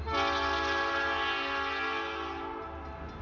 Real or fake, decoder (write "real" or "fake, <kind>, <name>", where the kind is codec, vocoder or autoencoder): real